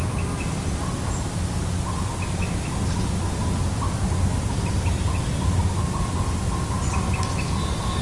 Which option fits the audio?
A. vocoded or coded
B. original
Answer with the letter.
B